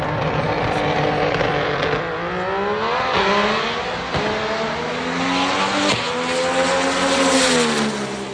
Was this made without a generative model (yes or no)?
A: yes